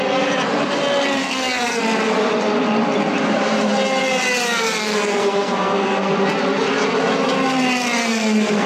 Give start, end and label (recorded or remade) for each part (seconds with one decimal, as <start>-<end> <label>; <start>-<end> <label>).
0.0-1.2 recorded; 1.2-1.8 remade; 1.8-4.8 recorded; 4.8-6.1 remade; 6.1-8.0 recorded; 8.0-8.7 remade